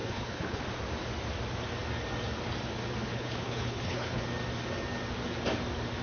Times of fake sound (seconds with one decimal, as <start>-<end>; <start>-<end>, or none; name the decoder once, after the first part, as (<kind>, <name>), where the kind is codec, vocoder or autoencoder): 0.0-0.6 (codec, HILCodec); 3.1-4.2